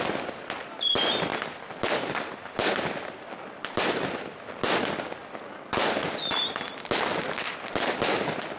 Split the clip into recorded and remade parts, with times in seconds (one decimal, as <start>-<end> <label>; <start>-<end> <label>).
0.0-8.6 recorded